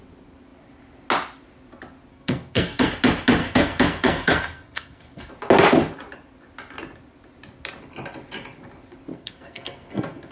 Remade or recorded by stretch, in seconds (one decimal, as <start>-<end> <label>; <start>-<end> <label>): 0.0-2.1 recorded; 2.1-2.9 remade; 2.9-3.4 recorded; 3.4-5.3 remade; 5.3-9.1 recorded; 9.1-10.3 remade